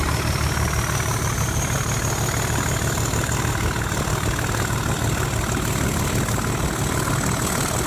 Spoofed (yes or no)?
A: no